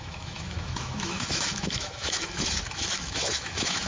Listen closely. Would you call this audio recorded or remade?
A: remade